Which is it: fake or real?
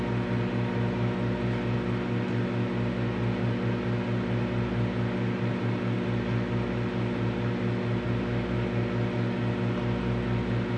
real